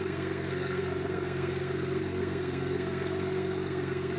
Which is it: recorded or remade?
remade